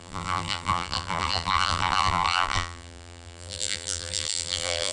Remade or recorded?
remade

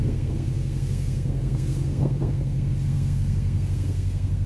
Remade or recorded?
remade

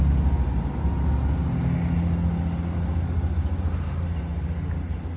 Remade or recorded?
recorded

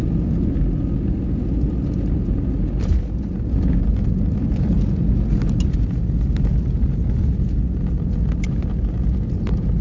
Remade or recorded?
recorded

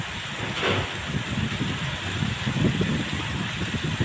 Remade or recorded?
recorded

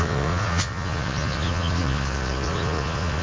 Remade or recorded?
remade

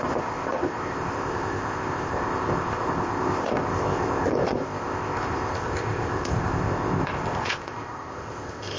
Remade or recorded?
remade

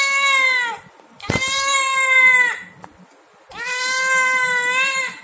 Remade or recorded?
recorded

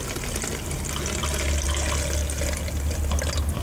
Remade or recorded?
recorded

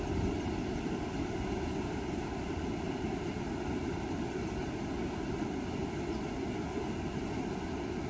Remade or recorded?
recorded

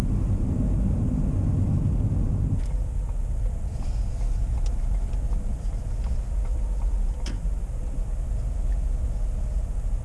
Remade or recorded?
recorded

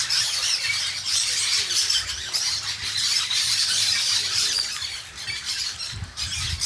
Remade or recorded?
remade